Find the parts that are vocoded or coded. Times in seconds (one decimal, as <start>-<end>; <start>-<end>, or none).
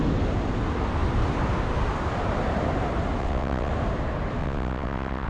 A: 3.2-3.7; 4.4-5.3